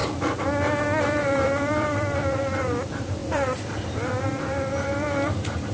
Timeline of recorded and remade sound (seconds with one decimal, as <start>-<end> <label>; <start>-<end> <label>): 0.0-1.0 recorded; 1.0-5.7 remade